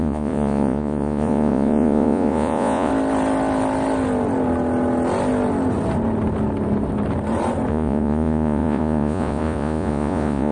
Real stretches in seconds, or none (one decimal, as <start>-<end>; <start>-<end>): 2.9-7.7